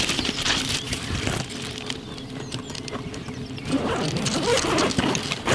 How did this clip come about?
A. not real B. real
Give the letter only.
A